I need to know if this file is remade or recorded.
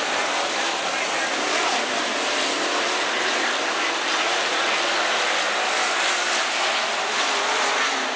remade